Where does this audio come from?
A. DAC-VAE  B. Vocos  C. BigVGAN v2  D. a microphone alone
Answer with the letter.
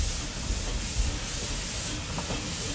D